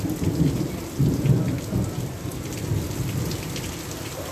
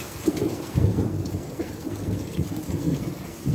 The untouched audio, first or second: first